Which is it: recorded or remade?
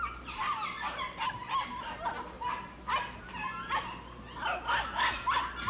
recorded